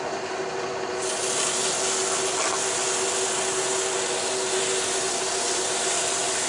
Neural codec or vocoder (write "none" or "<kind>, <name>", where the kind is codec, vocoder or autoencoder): none